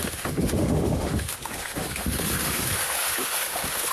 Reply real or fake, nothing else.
fake